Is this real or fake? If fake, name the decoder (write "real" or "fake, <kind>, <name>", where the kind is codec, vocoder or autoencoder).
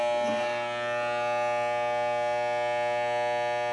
real